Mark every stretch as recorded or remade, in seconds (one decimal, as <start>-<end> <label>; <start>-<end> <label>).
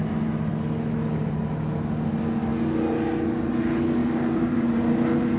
0.0-4.0 recorded; 4.0-4.8 remade; 4.8-5.4 recorded